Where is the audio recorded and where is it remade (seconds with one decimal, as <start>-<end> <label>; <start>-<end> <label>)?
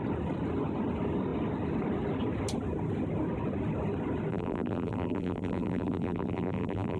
0.0-4.3 recorded; 4.3-7.0 remade